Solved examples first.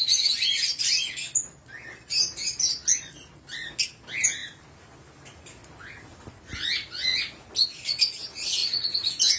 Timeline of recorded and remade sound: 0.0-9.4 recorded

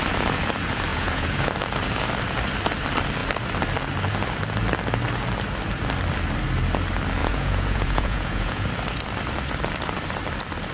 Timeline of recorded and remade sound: 0.0-0.9 recorded; 0.9-1.5 remade; 1.5-7.2 recorded; 7.2-8.7 remade; 8.7-10.7 recorded

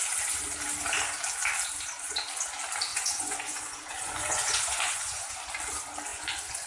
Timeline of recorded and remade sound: 0.0-2.9 recorded; 2.9-5.3 remade; 5.3-6.1 recorded; 6.1-6.7 remade

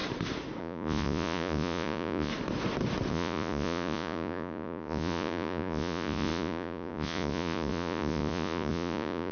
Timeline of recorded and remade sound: 0.0-0.6 recorded; 0.6-2.3 remade; 2.3-3.1 recorded; 3.1-9.3 remade

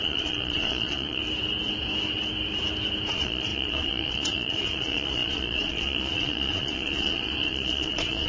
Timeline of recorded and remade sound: 0.0-1.2 remade; 1.2-3.1 recorded; 3.1-8.3 remade

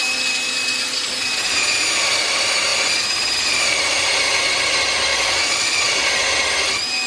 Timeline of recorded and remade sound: 0.0-5.1 recorded; 5.1-6.3 remade; 6.3-7.1 recorded

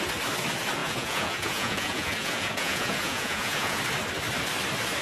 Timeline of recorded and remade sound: 0.0-0.8 recorded; 0.8-3.8 remade; 3.8-5.0 recorded